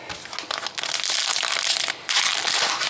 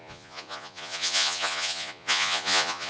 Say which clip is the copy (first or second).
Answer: second